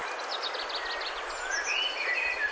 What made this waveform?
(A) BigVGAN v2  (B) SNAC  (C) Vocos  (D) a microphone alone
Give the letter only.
D